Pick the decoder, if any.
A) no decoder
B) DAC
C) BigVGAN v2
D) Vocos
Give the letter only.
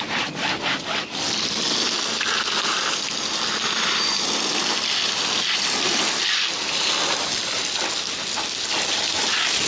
A